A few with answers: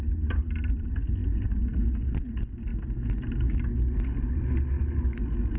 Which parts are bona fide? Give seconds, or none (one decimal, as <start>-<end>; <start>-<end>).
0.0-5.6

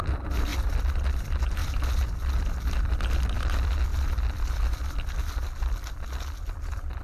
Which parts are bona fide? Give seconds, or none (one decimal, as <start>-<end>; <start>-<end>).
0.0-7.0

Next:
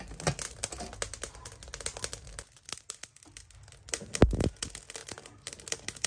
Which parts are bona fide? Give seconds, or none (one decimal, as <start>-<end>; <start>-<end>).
0.0-6.1

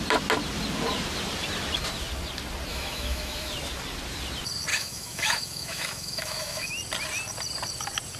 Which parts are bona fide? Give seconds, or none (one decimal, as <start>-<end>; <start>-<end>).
0.0-2.7; 3.5-4.7; 6.7-8.2

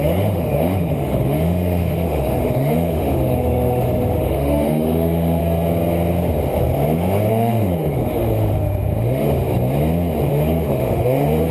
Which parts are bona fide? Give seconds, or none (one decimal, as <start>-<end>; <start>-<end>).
5.4-7.3; 9.4-10.3

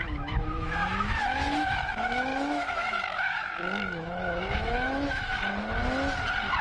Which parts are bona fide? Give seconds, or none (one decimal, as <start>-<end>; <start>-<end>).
5.3-6.6